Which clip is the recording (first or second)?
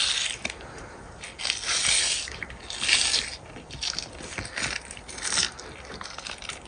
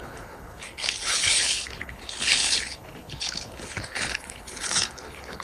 first